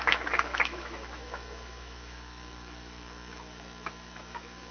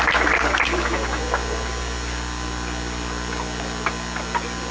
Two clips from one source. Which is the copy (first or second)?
first